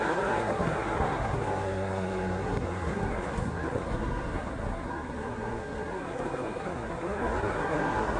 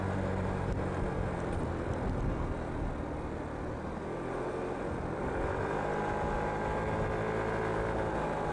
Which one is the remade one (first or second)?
first